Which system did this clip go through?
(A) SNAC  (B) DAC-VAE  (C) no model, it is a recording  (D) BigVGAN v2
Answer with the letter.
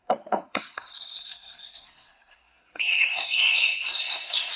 A